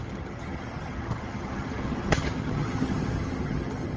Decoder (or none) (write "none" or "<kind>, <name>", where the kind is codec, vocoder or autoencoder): vocoder, HiFi-GAN